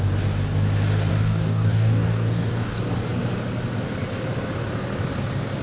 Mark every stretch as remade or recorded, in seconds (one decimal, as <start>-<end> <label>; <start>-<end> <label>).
0.0-1.1 recorded; 1.1-2.8 remade; 2.8-5.6 recorded